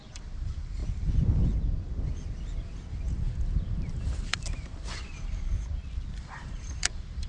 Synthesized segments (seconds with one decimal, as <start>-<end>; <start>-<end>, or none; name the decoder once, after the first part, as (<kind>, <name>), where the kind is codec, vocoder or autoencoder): 0.0-0.8 (vocoder, BigVGAN v2); 2.9-5.5; 6.2-7.3